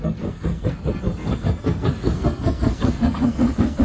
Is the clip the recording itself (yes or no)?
no